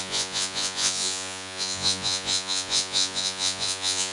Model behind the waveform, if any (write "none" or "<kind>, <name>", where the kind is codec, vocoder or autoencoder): vocoder, Vocos